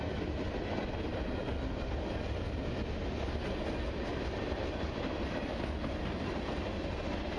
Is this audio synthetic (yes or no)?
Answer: no